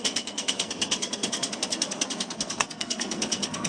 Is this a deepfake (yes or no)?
yes